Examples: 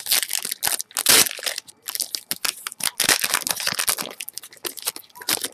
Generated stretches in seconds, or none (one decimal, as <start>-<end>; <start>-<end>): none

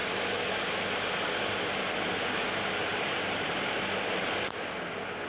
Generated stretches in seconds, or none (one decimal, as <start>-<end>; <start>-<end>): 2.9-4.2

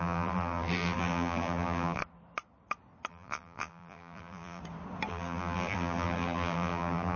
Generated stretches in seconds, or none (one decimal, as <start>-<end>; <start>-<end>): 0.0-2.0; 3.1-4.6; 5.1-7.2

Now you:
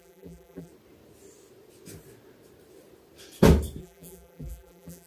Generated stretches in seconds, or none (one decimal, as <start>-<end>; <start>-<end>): 0.0-0.7; 3.8-5.1

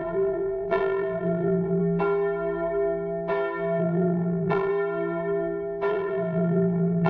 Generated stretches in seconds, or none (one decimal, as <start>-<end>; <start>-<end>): 0.0-1.8; 3.8-4.7; 5.9-7.1